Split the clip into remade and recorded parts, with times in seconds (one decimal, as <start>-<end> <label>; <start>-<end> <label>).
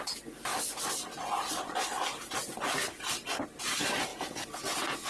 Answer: 0.0-4.1 recorded; 4.1-5.1 remade